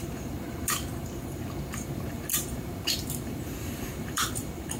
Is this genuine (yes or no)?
no